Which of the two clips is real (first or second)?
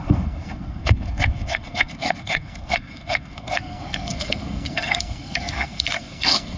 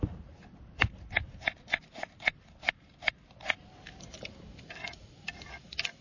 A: second